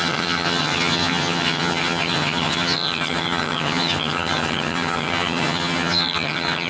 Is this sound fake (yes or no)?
yes